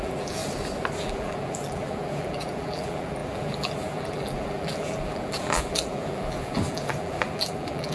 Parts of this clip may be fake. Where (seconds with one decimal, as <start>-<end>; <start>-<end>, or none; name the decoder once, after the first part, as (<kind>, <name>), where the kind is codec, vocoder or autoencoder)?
0.0-0.4 (vocoder, BigVGAN v2); 1.0-7.9